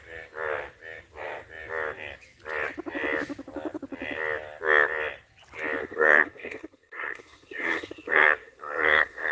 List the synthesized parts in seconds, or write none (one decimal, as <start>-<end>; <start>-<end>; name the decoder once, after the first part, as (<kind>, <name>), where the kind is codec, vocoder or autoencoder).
5.8-9.3 (codec, SNAC)